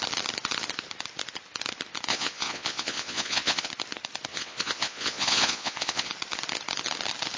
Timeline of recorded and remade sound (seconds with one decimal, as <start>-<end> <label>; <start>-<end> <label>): 0.0-2.1 recorded; 2.1-3.7 remade; 3.7-4.3 recorded; 4.3-6.1 remade; 6.1-7.4 recorded